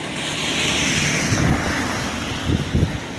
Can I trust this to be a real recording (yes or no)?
yes